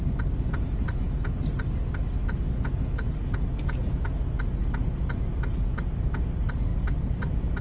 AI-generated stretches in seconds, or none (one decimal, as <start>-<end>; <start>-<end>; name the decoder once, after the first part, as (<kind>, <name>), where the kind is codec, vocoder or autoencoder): 6.7-7.6 (vocoder, BigVGAN v2)